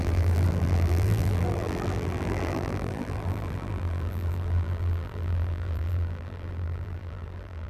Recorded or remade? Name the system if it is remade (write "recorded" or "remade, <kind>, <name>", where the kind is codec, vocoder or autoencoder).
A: remade, vocoder, BigVGAN v2